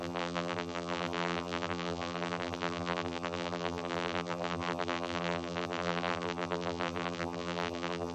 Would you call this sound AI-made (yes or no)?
yes